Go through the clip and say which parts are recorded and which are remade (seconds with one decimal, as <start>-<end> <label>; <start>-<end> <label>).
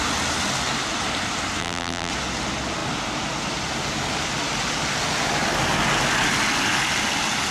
0.0-1.6 recorded; 1.6-2.1 remade; 2.1-7.5 recorded